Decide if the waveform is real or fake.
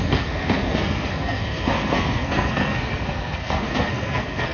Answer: fake